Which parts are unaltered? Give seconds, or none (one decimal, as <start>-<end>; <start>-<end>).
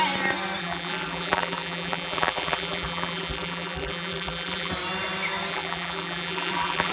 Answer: 0.0-0.6; 4.7-5.5